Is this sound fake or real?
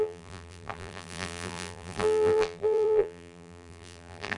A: fake